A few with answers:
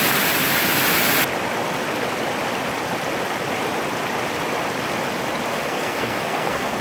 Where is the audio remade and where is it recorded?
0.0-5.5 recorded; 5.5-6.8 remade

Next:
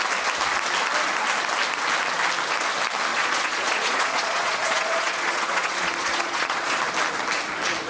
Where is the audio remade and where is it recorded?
0.0-3.1 recorded; 3.1-6.8 remade; 6.8-7.9 recorded

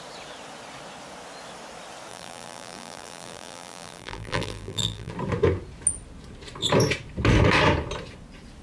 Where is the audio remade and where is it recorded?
0.0-2.1 recorded; 2.1-5.1 remade; 5.1-8.6 recorded

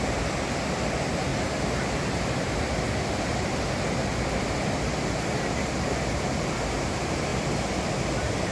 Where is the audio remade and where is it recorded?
0.0-8.5 recorded

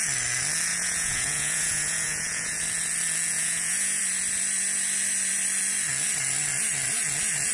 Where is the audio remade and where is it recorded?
0.0-0.7 recorded; 0.7-2.6 remade; 2.6-3.3 recorded; 3.3-4.0 remade; 4.0-7.5 recorded

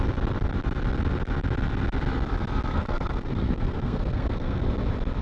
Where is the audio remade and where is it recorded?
0.0-2.7 recorded; 2.7-4.6 remade; 4.6-5.2 recorded